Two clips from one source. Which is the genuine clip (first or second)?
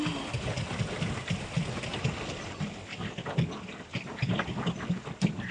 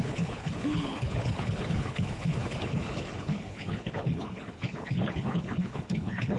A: first